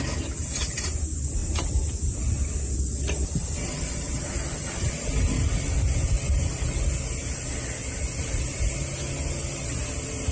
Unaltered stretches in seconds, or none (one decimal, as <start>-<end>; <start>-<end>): 0.0-10.3